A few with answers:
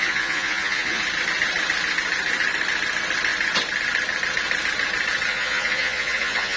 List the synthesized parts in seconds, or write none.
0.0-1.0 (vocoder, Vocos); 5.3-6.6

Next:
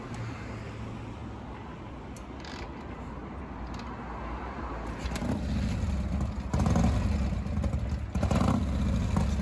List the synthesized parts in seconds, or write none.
none

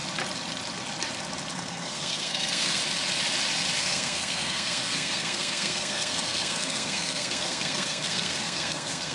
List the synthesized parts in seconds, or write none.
1.5-2.8 (codec, SNAC); 3.8-9.1

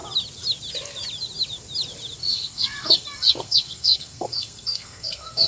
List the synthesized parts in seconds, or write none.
2.2-5.5 (codec, SNAC)

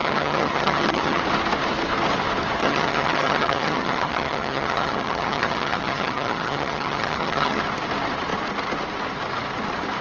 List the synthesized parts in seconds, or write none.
0.0-1.2 (vocoder, HiFi-GAN); 2.6-7.6

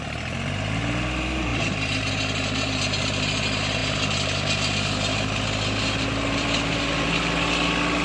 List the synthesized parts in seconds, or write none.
1.5-2.1 (vocoder, BigVGAN v2); 3.8-6.7

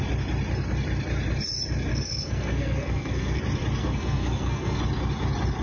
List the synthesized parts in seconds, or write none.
1.9-3.4 (codec, SNAC); 3.8-4.8